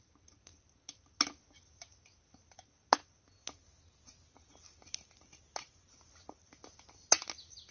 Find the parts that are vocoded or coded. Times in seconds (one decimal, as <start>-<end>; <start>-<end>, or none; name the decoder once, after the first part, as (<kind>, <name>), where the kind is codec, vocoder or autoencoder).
none